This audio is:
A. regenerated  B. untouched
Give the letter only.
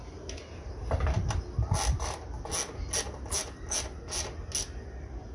B